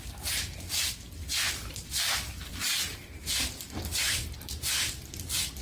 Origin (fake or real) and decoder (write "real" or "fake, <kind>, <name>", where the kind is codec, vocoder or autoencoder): real